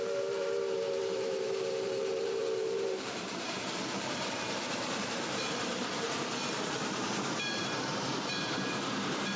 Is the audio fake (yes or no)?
yes